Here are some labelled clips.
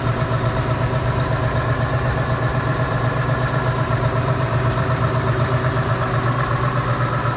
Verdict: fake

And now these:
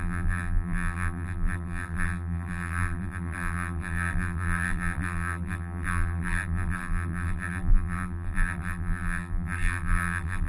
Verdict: fake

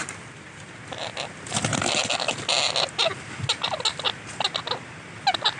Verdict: real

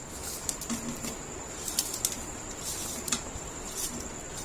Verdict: real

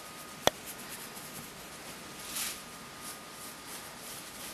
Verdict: real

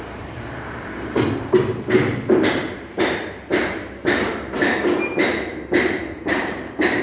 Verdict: fake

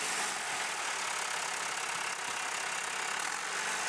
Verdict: real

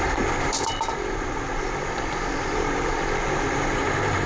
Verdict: fake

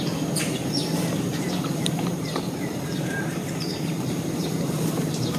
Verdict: fake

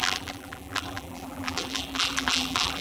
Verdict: fake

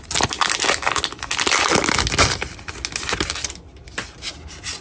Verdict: real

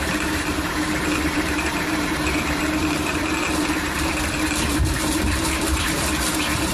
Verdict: fake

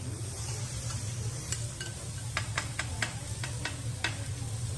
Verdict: fake